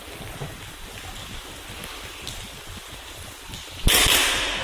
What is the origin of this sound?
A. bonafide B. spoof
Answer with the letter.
A